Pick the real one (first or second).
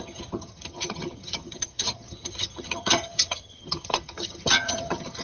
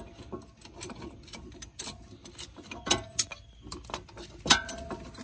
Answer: second